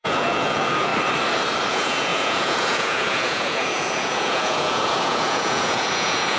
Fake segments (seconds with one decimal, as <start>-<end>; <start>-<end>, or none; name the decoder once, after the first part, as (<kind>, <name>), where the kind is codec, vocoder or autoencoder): 0.0-0.9 (vocoder, Vocos); 1.7-6.4